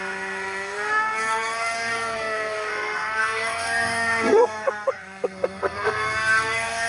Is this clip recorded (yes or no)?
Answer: no